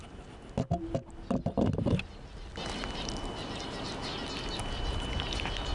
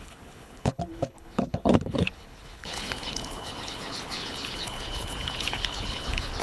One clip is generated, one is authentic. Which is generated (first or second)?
second